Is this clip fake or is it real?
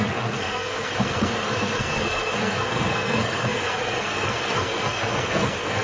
fake